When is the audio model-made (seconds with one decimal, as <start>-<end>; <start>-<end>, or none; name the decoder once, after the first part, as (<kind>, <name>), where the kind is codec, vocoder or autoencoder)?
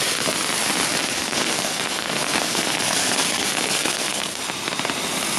1.2-4.4 (codec, SNAC)